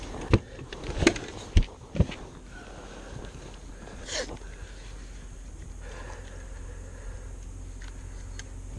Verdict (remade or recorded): recorded